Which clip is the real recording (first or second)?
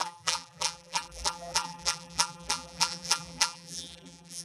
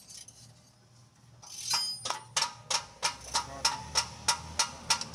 second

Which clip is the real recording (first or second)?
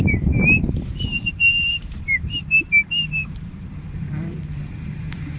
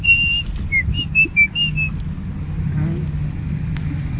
second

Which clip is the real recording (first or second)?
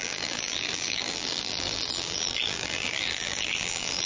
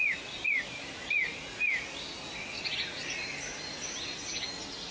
second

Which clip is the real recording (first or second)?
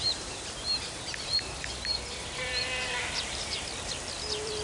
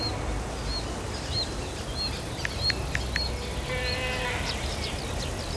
second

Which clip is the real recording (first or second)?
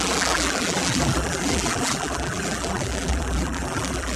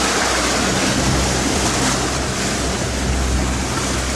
second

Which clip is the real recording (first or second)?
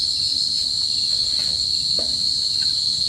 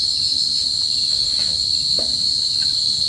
second